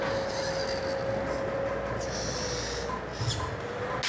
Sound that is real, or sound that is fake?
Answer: real